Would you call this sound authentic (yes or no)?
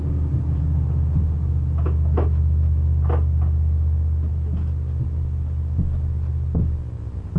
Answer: yes